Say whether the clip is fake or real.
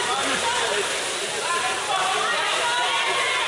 real